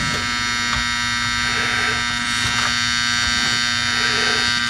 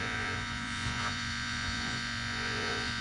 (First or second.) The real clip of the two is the first